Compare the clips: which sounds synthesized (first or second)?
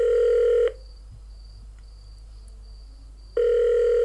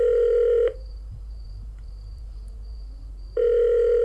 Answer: second